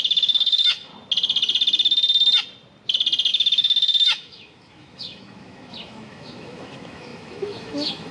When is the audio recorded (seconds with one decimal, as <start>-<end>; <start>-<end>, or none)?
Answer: 0.9-3.3

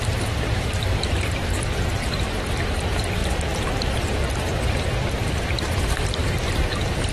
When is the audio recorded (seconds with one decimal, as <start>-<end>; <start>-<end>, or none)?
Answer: 0.0-0.9; 1.5-3.2

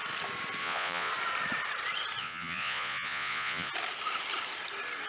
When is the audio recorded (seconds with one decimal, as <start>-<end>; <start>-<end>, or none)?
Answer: 0.0-0.6; 1.1-2.2; 3.7-5.1

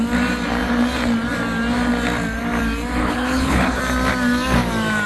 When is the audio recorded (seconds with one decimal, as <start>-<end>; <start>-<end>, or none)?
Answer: 0.0-3.0; 3.8-5.1

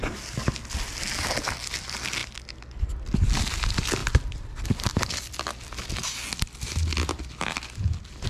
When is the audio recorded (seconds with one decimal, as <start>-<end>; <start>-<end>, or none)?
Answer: 0.0-8.3

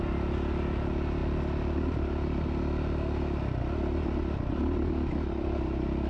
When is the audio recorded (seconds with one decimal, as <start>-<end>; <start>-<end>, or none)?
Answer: 0.0-6.1

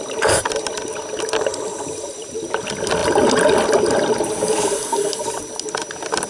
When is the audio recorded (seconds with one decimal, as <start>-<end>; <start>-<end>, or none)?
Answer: 0.0-1.5; 2.6-6.3

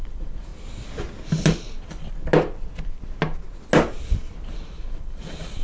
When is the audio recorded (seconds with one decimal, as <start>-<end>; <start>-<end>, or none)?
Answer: 0.5-1.9; 2.3-4.6